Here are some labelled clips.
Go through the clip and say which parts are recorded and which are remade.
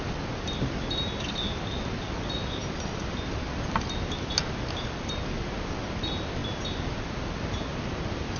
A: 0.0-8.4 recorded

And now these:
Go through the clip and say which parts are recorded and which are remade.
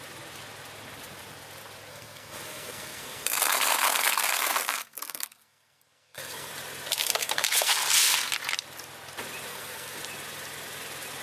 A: 0.0-1.9 recorded; 1.9-6.5 remade; 6.5-7.0 recorded; 7.0-8.3 remade; 8.3-9.5 recorded; 9.5-10.0 remade; 10.0-11.2 recorded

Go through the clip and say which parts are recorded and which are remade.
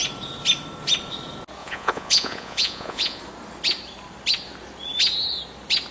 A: 0.0-1.6 recorded; 1.6-3.2 remade; 3.2-5.9 recorded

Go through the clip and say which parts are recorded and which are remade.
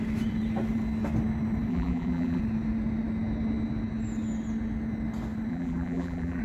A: 0.0-1.7 recorded; 1.7-2.4 remade; 2.4-5.5 recorded; 5.5-6.4 remade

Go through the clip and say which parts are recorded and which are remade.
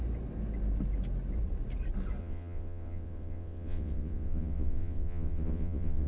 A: 0.0-2.2 recorded; 2.2-6.1 remade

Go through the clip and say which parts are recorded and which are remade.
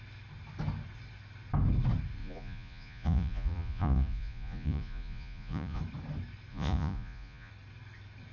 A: 0.0-2.2 recorded; 2.2-5.8 remade; 5.8-6.5 recorded; 6.5-7.5 remade; 7.5-8.3 recorded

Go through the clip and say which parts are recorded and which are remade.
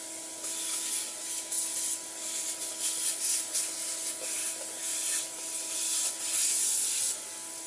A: 0.0-7.7 recorded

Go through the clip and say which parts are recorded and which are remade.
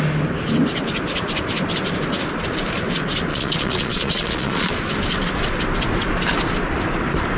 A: 0.0-3.3 recorded; 3.3-4.7 remade; 4.7-7.4 recorded